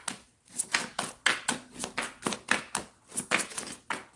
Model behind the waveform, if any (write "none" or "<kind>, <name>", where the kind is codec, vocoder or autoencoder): none